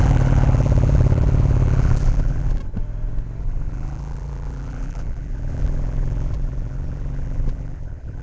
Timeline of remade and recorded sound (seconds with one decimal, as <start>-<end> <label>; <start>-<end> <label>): 0.0-2.6 remade; 2.6-3.4 recorded; 3.4-8.2 remade